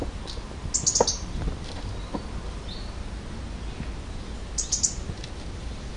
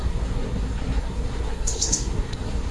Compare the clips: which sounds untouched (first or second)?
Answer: first